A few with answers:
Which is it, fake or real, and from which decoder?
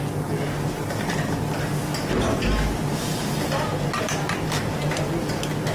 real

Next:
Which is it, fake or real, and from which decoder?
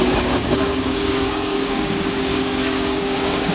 fake, codec, DAC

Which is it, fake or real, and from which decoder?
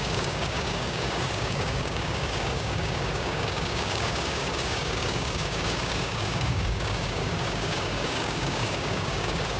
fake, codec, DAC